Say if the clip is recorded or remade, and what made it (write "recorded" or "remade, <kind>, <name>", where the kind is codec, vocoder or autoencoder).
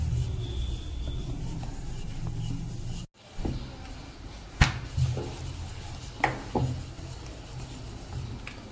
recorded